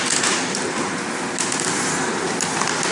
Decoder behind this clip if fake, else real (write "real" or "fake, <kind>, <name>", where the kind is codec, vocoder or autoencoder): real